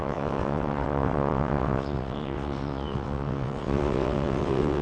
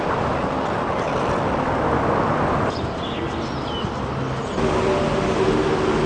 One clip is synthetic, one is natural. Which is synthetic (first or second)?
first